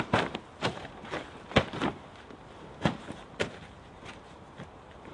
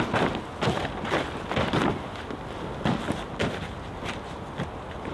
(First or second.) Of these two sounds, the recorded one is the second